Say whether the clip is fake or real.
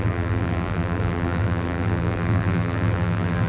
fake